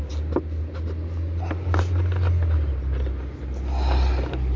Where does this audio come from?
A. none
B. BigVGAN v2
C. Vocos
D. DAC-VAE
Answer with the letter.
A